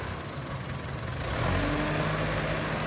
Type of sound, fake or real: real